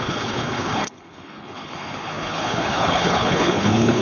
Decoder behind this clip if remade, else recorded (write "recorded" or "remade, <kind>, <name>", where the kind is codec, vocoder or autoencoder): remade, codec, HILCodec